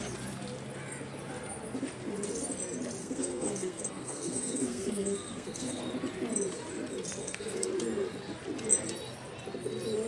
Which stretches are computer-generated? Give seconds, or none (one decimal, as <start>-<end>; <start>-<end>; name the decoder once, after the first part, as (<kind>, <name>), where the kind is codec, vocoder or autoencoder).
3.0-5.8 (codec, SNAC); 7.2-7.7